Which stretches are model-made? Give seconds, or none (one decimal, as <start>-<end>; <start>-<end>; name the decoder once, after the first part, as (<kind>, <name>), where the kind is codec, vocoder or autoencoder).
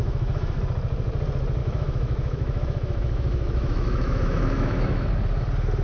0.0-0.6 (autoencoder, DAC-VAE); 1.6-5.1